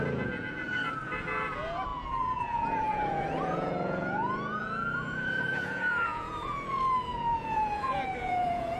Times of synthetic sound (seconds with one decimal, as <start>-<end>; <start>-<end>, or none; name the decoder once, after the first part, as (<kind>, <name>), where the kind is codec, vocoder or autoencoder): 0.0-8.8 (vocoder, Vocos)